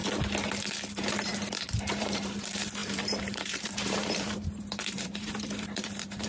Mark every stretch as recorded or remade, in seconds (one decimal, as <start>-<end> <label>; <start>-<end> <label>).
0.0-0.9 recorded; 0.9-1.3 remade; 1.3-1.9 recorded; 1.9-6.3 remade